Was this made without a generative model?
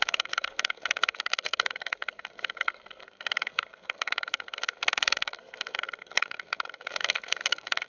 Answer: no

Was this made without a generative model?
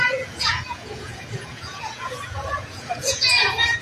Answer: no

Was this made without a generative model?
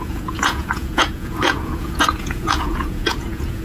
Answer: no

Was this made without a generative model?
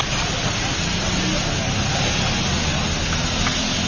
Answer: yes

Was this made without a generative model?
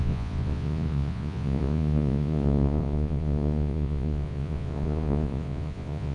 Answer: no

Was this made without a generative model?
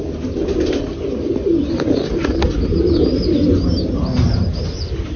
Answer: yes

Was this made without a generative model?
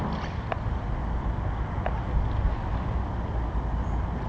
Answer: yes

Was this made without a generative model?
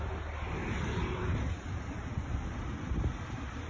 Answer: yes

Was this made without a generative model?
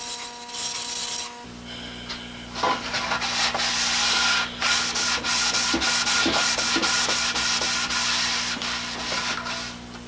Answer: yes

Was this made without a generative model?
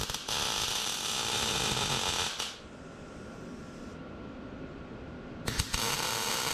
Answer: no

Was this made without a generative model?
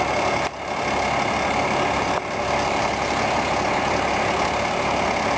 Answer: yes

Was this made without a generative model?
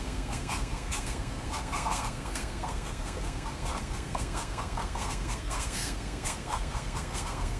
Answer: no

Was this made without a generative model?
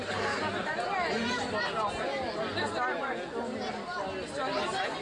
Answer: yes